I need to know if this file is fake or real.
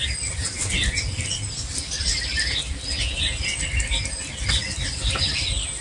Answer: real